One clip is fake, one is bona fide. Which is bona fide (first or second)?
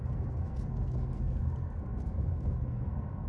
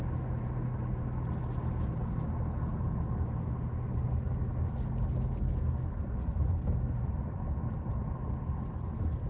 second